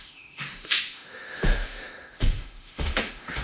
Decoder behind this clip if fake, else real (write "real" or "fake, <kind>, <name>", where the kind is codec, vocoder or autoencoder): fake, autoencoder, DAC-VAE